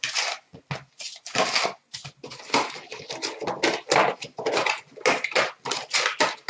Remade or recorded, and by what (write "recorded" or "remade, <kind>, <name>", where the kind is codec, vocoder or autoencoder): recorded